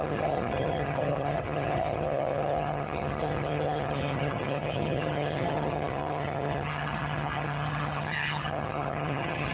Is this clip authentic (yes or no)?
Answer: no